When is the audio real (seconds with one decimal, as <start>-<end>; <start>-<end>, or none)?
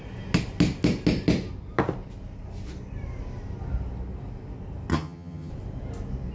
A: 0.0-4.9; 5.5-6.3